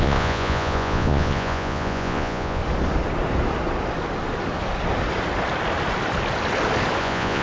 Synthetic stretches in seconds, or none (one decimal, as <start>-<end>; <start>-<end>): 0.0-2.6; 7.0-7.4